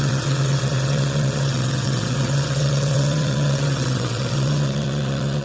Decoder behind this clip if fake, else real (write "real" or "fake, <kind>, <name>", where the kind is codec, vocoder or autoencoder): fake, vocoder, WaveNeXt